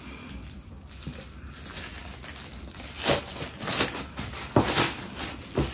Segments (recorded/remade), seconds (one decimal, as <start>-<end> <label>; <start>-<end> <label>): 0.0-5.7 recorded

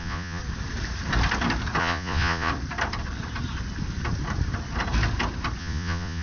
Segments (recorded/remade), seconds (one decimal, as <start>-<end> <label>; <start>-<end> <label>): 0.0-0.4 remade; 0.4-1.8 recorded; 1.8-2.5 remade; 2.5-5.6 recorded; 5.6-6.2 remade